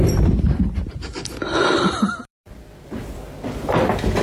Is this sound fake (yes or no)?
yes